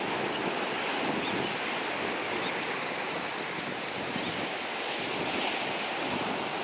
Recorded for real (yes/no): yes